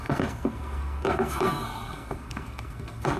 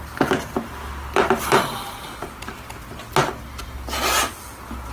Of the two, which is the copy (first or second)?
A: first